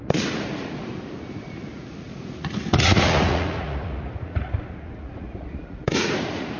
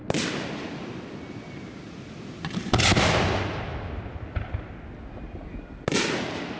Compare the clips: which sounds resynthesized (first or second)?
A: first